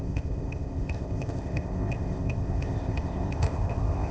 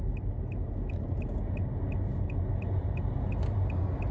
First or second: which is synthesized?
first